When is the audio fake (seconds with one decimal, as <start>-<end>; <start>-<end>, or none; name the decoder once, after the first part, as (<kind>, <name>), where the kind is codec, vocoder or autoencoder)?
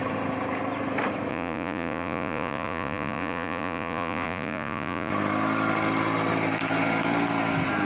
1.3-5.1 (vocoder, Vocos)